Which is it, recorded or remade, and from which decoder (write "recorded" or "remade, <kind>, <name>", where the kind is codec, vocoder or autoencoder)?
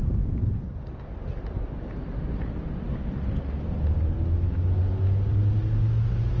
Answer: recorded